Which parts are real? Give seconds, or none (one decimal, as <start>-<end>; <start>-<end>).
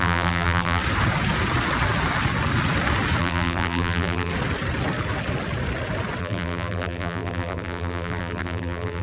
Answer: 0.8-3.2; 4.3-6.2